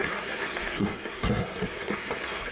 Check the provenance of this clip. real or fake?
fake